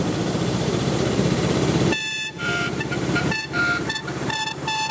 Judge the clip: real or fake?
fake